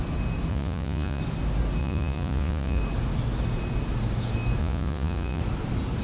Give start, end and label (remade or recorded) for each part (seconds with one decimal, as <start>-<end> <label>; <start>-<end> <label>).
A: 0.0-0.5 recorded; 0.5-1.2 remade; 1.2-1.8 recorded; 1.8-2.8 remade; 2.8-4.6 recorded; 4.6-5.4 remade; 5.4-6.0 recorded